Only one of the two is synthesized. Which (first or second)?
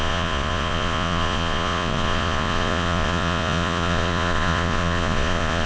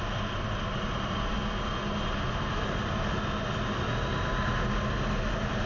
first